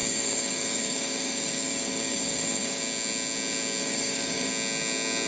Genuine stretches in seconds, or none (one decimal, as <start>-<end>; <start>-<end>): 2.8-3.8; 4.5-5.3